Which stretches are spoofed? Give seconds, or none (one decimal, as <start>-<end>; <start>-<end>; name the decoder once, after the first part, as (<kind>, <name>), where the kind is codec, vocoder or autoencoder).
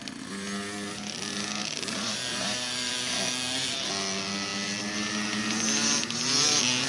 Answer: 1.6-3.2 (vocoder, BigVGAN v2)